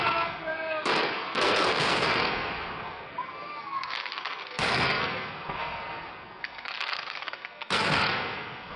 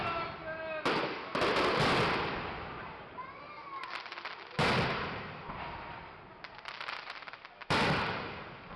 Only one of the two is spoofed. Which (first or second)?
first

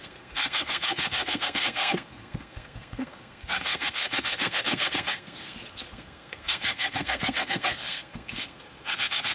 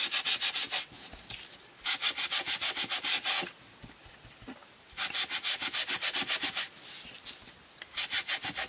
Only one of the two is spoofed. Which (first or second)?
first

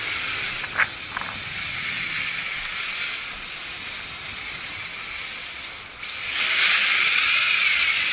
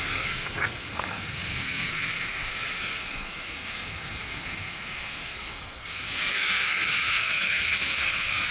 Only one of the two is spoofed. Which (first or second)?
second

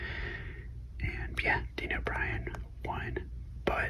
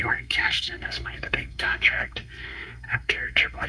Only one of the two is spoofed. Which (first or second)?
second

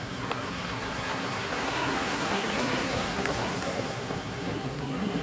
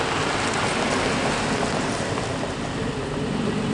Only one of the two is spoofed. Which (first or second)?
first